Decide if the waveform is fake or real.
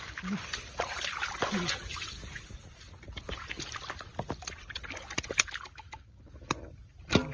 real